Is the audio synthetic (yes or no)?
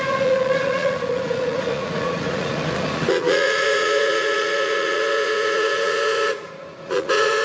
yes